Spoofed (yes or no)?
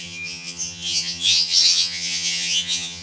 yes